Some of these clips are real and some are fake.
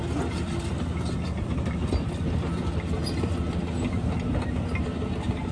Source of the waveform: real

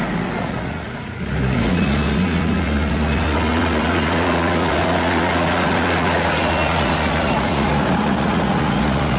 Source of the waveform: fake